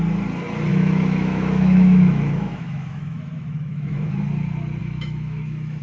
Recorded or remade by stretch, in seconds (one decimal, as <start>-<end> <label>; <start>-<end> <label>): 0.0-0.7 recorded; 0.7-4.2 remade; 4.2-4.8 recorded; 4.8-5.8 remade